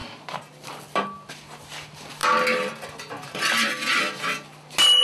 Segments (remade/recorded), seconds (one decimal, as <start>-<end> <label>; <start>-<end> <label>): 0.0-5.0 recorded